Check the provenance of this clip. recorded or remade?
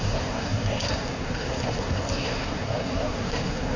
remade